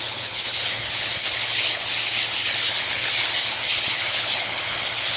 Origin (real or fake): fake